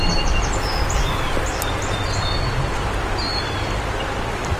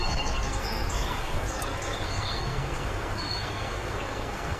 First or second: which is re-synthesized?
second